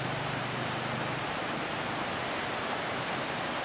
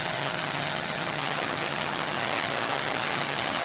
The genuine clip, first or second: first